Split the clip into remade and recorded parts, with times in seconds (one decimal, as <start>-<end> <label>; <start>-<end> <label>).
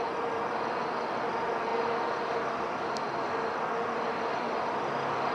0.0-5.3 recorded